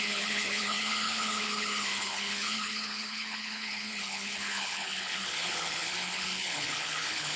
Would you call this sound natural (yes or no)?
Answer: no